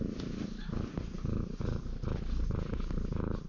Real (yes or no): yes